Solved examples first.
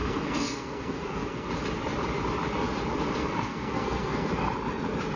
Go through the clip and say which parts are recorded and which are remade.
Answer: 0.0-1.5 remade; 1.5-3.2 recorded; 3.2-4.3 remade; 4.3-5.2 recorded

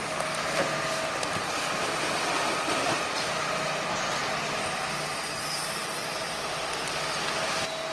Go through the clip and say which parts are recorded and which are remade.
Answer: 0.0-7.9 recorded

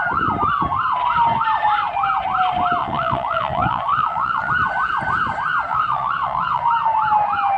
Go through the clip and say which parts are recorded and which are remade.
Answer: 0.0-2.8 recorded; 2.8-4.5 remade; 4.5-5.7 recorded; 5.7-6.6 remade; 6.6-7.6 recorded

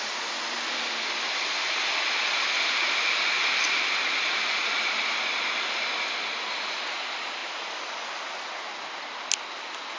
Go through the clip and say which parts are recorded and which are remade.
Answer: 0.0-10.0 recorded

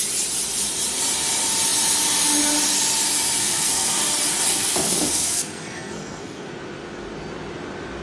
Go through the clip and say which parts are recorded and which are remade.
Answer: 0.0-3.4 recorded; 3.4-4.0 remade; 4.0-4.5 recorded; 4.5-6.5 remade; 6.5-8.0 recorded

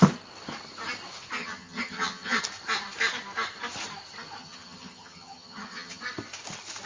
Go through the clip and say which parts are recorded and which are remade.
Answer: 0.0-1.4 recorded; 1.4-2.4 remade; 2.4-4.4 recorded; 4.4-6.0 remade; 6.0-6.9 recorded

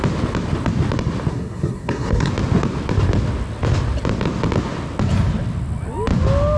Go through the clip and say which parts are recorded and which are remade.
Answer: 0.0-1.3 recorded; 1.3-2.3 remade; 2.3-6.6 recorded